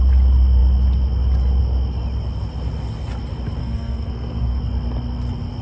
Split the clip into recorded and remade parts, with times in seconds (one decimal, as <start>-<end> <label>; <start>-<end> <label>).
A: 0.0-3.6 recorded; 3.6-4.6 remade; 4.6-5.6 recorded